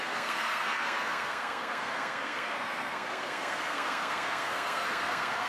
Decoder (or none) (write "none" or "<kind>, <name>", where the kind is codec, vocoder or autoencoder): codec, SNAC